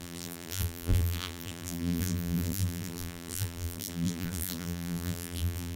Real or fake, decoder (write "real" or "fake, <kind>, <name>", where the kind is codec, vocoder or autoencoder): fake, vocoder, BigVGAN v2